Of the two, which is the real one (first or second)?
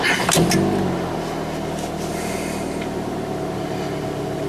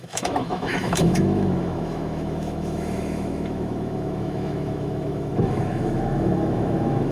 first